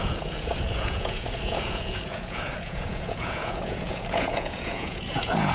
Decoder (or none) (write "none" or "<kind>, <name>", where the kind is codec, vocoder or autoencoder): vocoder, Vocos